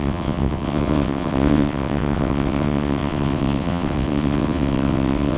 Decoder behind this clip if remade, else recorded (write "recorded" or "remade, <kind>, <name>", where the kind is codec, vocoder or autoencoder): remade, vocoder, WaveNeXt